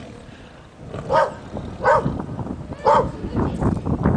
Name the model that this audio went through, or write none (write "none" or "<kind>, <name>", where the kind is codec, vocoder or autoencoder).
none